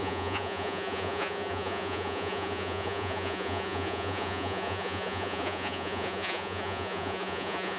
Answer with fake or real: fake